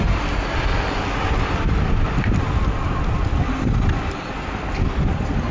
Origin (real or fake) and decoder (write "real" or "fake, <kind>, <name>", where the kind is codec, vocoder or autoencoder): real